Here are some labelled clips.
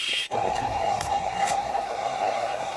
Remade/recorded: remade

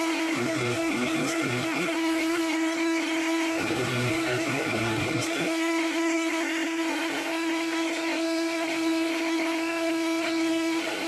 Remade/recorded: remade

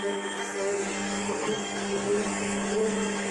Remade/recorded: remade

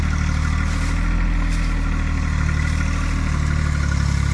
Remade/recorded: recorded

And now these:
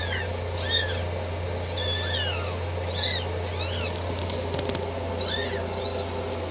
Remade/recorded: recorded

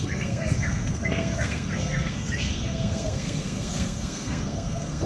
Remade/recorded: remade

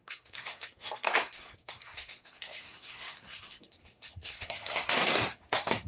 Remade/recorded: remade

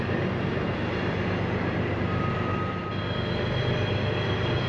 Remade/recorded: recorded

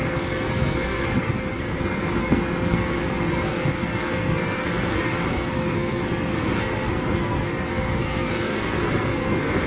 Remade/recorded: remade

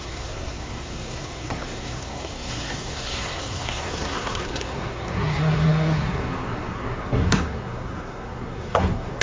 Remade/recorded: remade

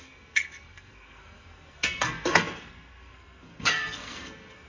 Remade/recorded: remade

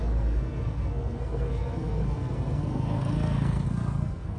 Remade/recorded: remade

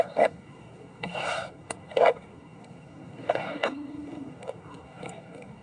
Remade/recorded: remade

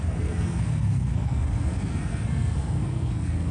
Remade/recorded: remade